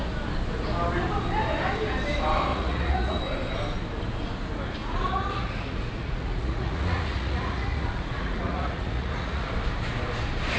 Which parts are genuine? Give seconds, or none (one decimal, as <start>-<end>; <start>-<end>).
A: 0.0-2.5; 3.2-4.8; 9.5-10.6